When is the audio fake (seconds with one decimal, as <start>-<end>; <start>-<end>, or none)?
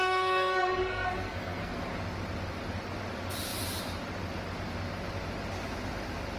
0.0-1.8